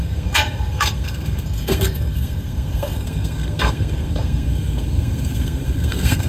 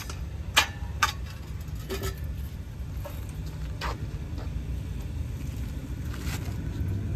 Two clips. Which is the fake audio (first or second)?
first